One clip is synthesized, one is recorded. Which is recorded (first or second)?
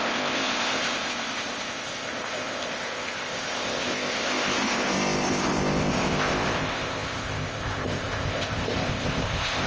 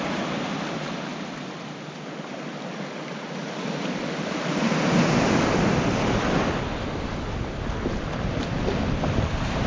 second